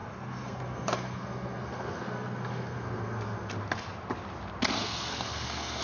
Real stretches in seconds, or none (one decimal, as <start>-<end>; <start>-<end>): 3.5-4.8